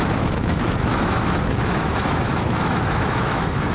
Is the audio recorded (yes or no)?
no